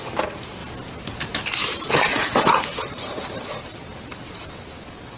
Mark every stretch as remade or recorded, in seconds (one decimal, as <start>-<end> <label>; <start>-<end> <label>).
0.0-1.6 recorded; 1.6-3.2 remade; 3.2-5.2 recorded